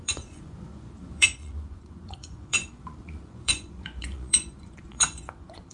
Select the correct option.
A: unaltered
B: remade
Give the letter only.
B